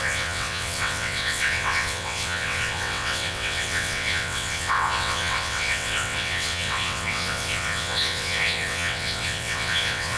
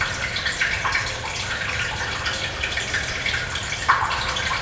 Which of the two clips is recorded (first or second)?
second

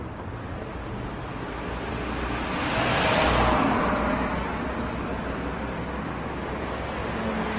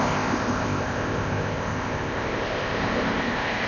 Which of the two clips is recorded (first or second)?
first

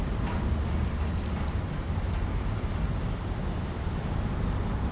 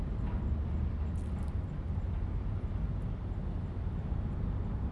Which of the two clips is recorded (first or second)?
second